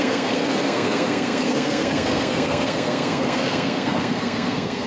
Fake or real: fake